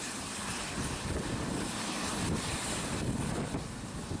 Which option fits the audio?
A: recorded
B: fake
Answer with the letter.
A